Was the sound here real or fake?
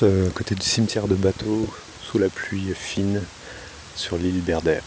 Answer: real